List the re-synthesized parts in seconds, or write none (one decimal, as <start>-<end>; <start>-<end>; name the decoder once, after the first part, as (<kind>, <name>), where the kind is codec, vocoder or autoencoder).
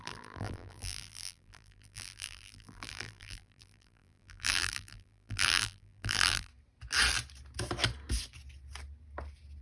0.0-6.5 (vocoder, BigVGAN v2)